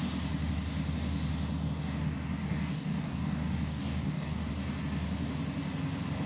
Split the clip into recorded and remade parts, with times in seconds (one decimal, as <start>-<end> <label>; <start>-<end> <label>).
0.0-2.4 recorded; 2.4-4.5 remade; 4.5-6.3 recorded